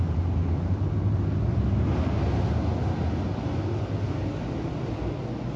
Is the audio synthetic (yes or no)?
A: no